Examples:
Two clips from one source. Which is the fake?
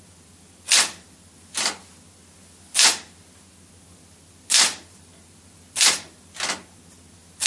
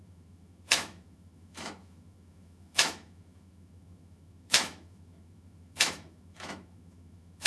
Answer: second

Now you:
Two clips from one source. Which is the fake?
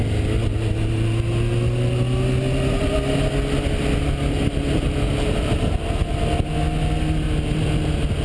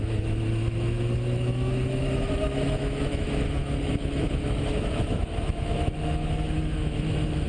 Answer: second